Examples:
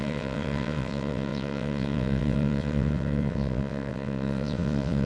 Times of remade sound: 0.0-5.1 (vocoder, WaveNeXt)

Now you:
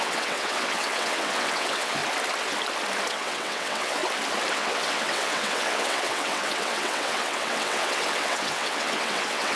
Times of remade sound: 0.0-2.0 (vocoder, WaveNeXt); 3.1-4.0; 4.5-9.6

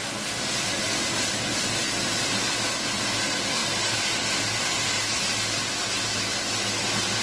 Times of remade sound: none

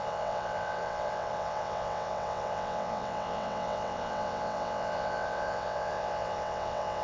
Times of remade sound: 0.0-7.0 (vocoder, WaveNeXt)

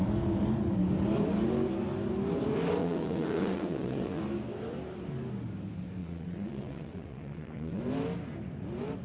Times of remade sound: 2.8-4.2 (vocoder, WaveNeXt); 6.0-7.8

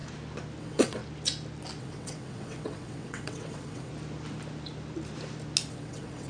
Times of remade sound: 0.6-1.0 (vocoder, WaveNeXt); 1.8-3.9; 5.7-6.3